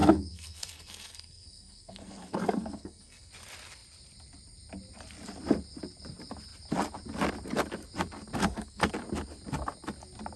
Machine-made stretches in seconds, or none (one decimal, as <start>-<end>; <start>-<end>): 0.0-3.3; 8.4-8.9